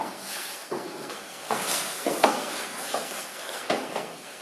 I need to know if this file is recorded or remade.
remade